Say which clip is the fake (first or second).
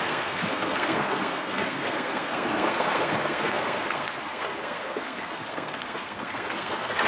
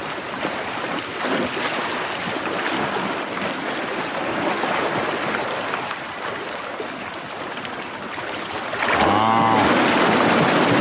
first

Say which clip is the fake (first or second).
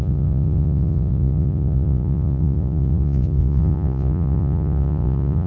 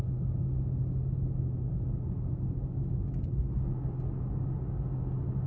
first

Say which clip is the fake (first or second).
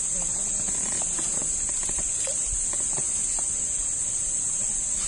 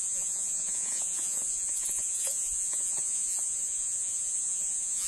second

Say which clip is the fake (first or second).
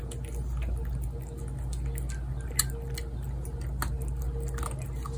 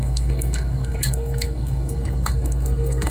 second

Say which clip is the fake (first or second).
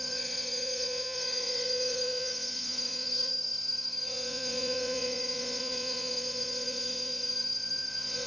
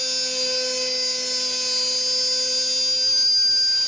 first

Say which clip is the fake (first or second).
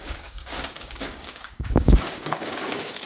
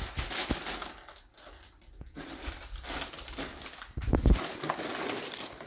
first